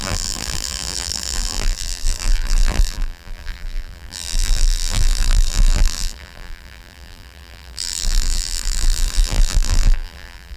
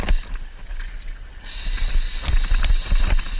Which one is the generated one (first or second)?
first